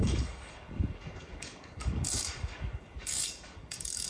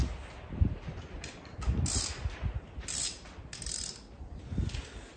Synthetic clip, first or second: first